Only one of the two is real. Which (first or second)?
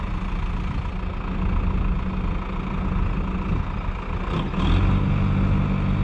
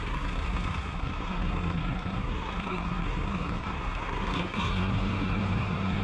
first